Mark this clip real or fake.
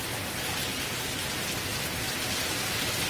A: real